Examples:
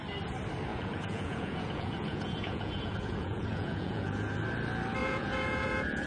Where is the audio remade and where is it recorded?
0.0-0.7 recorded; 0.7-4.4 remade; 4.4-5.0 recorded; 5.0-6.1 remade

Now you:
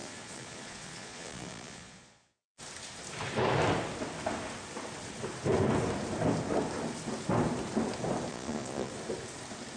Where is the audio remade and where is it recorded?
0.0-2.6 remade; 2.6-8.3 recorded; 8.3-8.9 remade; 8.9-9.8 recorded

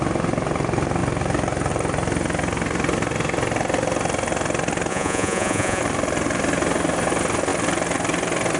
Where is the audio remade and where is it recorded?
0.0-4.9 recorded; 4.9-5.8 remade; 5.8-8.6 recorded

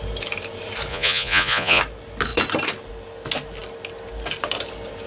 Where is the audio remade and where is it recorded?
0.0-0.9 recorded; 0.9-1.8 remade; 1.8-5.1 recorded

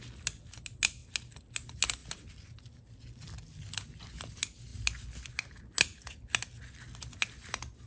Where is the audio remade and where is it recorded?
0.0-7.9 recorded

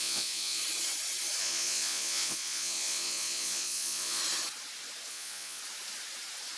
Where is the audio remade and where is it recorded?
0.0-0.6 remade; 0.6-1.4 recorded; 1.4-4.2 remade; 4.2-5.1 recorded; 5.1-5.6 remade; 5.6-6.6 recorded